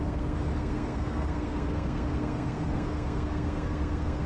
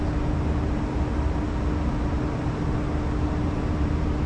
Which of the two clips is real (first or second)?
second